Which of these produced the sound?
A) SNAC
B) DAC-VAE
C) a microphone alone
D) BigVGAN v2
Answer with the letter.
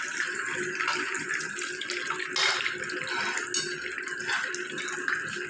C